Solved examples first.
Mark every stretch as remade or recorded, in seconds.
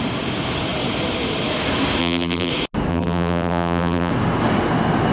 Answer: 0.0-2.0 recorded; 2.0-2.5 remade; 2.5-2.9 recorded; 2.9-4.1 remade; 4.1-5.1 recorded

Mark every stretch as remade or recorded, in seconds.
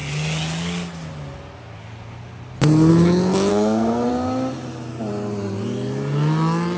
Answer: 0.0-3.5 recorded; 3.5-4.1 remade; 4.1-6.8 recorded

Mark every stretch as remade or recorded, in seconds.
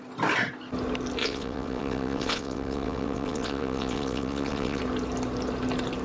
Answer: 0.0-1.2 recorded; 1.2-4.8 remade; 4.8-6.0 recorded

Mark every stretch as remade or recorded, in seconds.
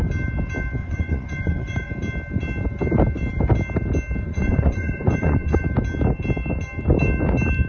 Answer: 0.0-0.8 recorded; 0.8-1.9 remade; 1.9-4.3 recorded; 4.3-5.6 remade; 5.6-7.7 recorded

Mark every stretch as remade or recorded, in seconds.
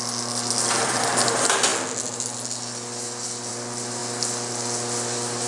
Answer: 0.0-5.5 recorded